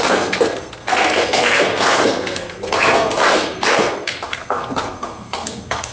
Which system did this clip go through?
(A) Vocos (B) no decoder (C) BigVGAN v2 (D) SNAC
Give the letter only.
D